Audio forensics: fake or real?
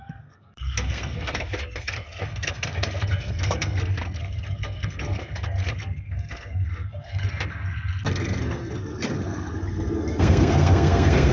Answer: fake